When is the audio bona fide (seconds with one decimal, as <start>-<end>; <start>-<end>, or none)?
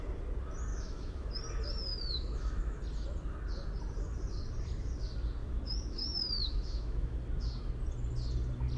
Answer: 0.0-0.7; 1.3-1.9; 2.8-5.4; 7.2-8.8